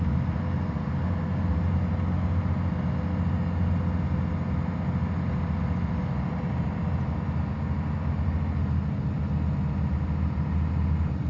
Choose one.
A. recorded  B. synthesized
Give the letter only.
A